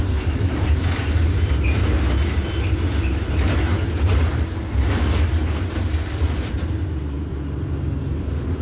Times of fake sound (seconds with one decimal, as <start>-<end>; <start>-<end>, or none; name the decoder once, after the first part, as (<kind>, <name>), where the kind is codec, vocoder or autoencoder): 0.0-1.8 (vocoder, BigVGAN v2); 6.5-7.3; 8.0-8.6